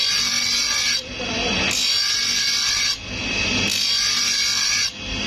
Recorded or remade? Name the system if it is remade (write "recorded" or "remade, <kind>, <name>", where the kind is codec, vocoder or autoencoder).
recorded